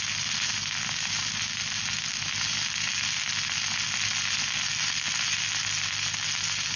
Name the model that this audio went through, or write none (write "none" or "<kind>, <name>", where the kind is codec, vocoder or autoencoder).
none